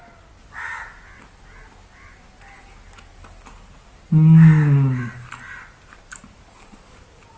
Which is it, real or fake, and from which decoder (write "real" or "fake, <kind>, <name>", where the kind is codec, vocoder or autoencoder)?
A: real